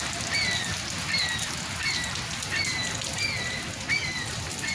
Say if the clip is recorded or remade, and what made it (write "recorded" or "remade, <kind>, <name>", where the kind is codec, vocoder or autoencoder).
recorded